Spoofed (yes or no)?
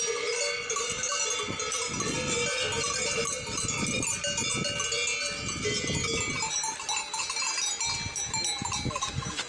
no